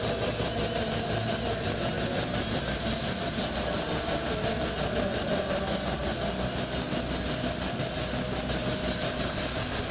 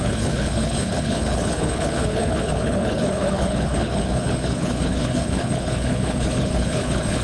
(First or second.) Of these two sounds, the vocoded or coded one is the second